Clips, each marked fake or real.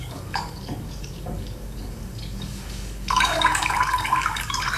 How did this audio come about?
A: fake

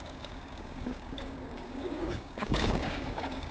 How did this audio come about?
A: fake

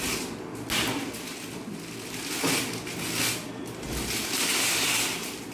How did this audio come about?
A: real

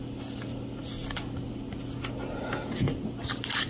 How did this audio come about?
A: real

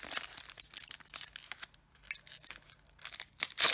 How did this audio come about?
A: real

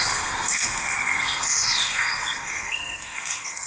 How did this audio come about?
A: fake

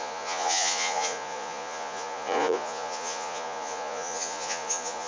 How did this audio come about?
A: fake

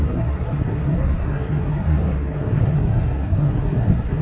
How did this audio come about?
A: fake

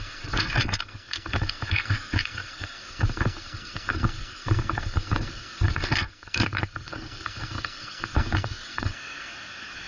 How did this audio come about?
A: fake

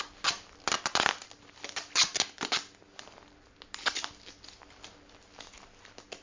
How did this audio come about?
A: real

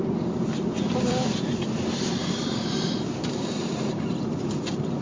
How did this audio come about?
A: fake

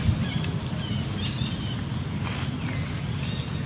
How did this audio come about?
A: real